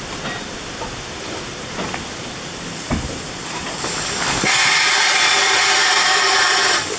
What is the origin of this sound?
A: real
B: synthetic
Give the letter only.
B